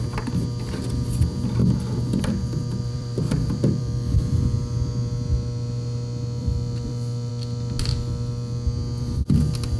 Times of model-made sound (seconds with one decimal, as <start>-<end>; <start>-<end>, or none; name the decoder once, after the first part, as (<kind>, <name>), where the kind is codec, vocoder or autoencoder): 1.6-4.4 (vocoder, BigVGAN v2); 6.4-7.3